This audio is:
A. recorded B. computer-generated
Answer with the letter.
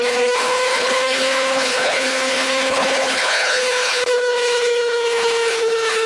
B